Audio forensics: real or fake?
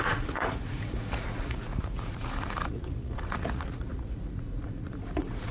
fake